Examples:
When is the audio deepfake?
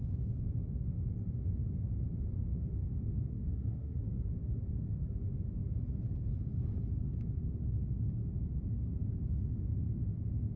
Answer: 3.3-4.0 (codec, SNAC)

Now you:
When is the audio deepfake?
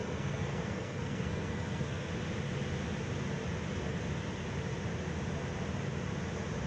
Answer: 0.0-2.1 (codec, SNAC)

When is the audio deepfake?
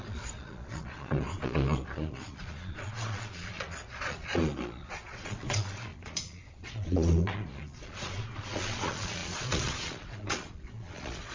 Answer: 0.0-11.3 (vocoder, Vocos)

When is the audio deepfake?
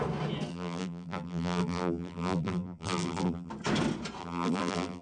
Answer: 0.5-3.5 (vocoder, BigVGAN v2); 4.2-5.0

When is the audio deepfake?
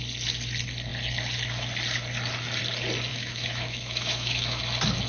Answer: 3.1-4.6 (autoencoder, DAC-VAE)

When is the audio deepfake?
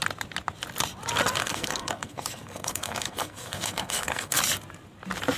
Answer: 1.4-4.4 (codec, SNAC)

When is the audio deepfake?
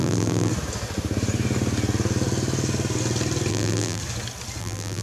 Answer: 0.0-0.5 (vocoder, BigVGAN v2); 3.5-4.0; 4.6-5.0